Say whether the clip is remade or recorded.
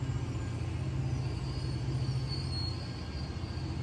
recorded